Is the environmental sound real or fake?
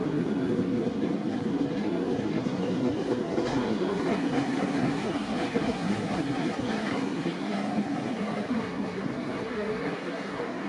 fake